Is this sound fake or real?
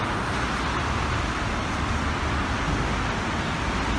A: real